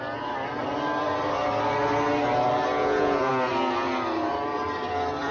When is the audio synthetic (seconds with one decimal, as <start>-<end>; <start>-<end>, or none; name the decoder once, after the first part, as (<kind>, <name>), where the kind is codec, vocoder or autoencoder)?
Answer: 2.8-3.3 (vocoder, Vocos)